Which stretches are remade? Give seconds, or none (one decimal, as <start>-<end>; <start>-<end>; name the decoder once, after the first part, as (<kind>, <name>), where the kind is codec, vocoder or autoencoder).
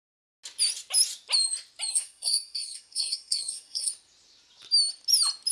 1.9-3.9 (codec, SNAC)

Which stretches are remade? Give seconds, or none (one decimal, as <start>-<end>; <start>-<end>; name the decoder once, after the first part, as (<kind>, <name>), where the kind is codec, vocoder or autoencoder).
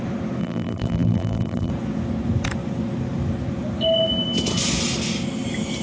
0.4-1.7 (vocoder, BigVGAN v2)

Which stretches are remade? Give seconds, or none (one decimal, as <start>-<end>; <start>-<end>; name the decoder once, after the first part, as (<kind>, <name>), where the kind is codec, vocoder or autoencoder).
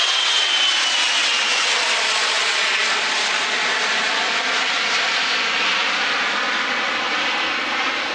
0.0-0.5 (vocoder, WaveNeXt); 1.2-1.8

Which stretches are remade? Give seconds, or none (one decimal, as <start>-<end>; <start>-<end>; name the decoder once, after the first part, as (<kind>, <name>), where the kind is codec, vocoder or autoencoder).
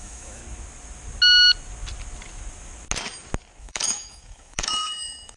0.0-0.4 (autoencoder, DAC-VAE); 3.6-5.4